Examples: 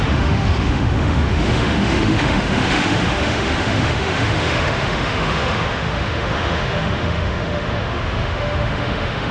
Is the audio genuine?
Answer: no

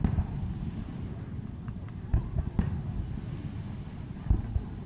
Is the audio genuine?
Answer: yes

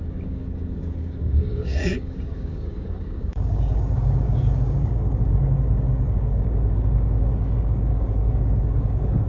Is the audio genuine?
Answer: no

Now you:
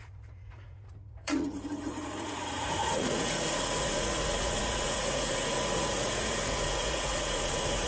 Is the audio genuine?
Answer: no